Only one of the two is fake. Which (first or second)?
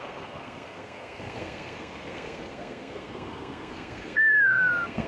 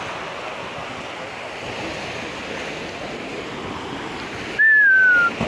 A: first